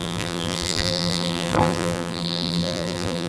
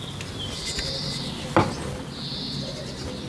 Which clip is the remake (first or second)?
first